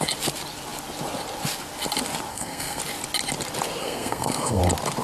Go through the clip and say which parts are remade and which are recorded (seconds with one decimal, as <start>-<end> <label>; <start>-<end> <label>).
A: 0.0-2.3 recorded; 2.3-2.8 remade; 2.8-3.8 recorded; 3.8-4.6 remade; 4.6-5.0 recorded